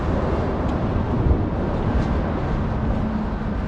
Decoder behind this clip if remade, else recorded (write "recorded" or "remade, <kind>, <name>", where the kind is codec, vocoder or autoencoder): recorded